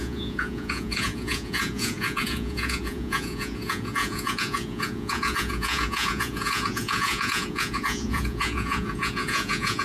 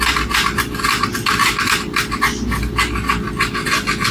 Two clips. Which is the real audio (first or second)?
second